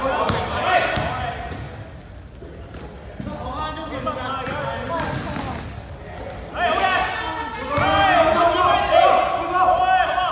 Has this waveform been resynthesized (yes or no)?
no